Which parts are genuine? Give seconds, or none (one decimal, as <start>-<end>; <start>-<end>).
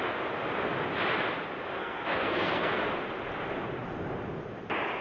0.0-1.8; 2.8-5.0